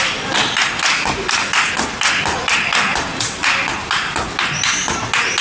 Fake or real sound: real